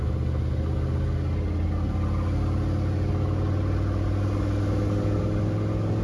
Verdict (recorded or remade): recorded